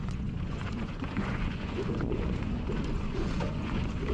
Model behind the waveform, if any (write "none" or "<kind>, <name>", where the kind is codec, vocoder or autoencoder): vocoder, Vocos